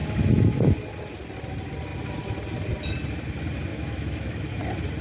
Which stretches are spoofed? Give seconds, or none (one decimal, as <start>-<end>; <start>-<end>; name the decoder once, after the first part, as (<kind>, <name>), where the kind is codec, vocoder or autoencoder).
3.7-4.6 (autoencoder, DAC-VAE)